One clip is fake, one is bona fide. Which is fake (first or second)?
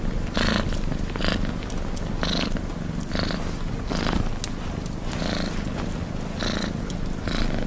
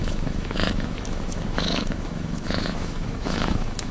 second